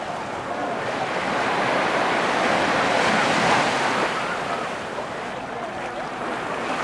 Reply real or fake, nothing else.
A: real